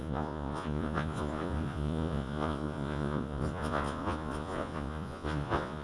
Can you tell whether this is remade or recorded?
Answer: remade